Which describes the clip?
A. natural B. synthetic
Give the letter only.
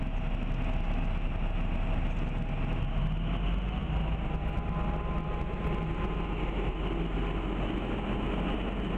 A